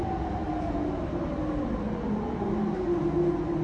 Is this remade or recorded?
recorded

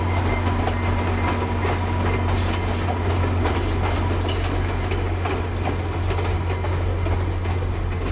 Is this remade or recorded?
recorded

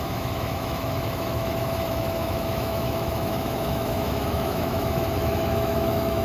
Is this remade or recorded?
remade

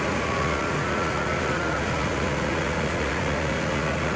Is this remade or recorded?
remade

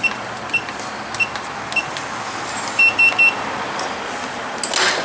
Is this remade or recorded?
recorded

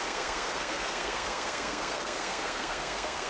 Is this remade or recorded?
remade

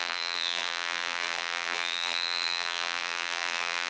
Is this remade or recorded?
remade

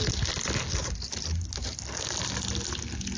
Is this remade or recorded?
recorded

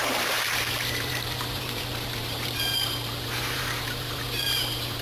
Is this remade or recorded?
remade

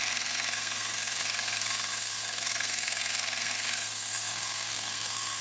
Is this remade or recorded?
remade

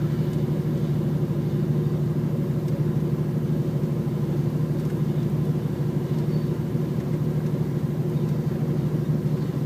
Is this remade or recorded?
recorded